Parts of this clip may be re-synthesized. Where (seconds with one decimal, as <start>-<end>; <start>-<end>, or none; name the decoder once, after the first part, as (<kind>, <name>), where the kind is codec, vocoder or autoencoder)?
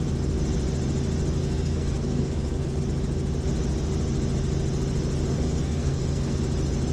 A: 1.4-2.8 (codec, SNAC); 5.3-6.4